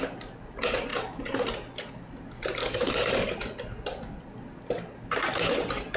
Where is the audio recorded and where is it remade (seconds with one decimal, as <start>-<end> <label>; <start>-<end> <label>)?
0.0-2.6 recorded; 2.6-3.3 remade; 3.3-6.0 recorded